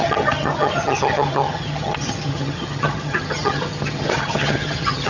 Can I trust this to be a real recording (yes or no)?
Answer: no